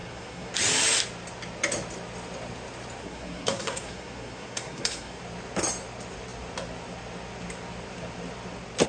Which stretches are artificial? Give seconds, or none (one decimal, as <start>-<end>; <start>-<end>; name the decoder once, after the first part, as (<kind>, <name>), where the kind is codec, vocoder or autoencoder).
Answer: 0.0-0.5 (codec, SNAC); 3.0-5.2